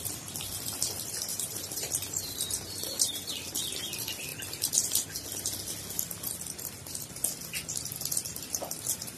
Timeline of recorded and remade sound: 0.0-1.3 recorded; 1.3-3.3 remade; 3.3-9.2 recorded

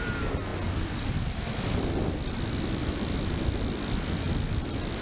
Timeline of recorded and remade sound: 0.0-5.0 remade

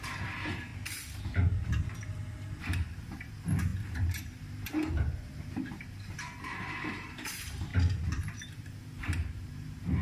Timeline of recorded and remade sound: 0.0-0.7 remade; 0.7-2.6 recorded; 2.6-10.0 remade